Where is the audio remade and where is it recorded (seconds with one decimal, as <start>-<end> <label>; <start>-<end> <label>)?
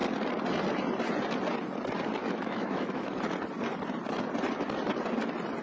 0.0-2.2 recorded; 2.2-3.2 remade; 3.2-5.6 recorded